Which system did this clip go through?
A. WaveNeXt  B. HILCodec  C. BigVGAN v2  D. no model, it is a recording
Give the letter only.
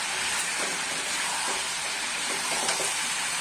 C